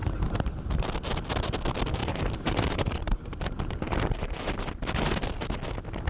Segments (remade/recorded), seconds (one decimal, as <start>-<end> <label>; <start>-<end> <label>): 0.0-0.9 remade; 0.9-2.0 recorded; 2.0-5.6 remade; 5.6-6.1 recorded